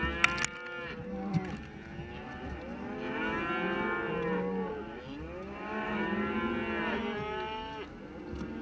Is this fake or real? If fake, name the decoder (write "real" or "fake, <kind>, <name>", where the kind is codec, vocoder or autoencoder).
real